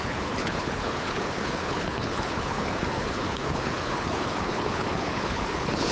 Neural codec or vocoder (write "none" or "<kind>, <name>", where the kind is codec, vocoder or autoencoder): codec, HILCodec